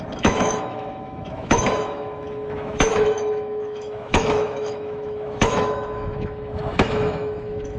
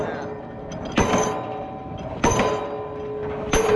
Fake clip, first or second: first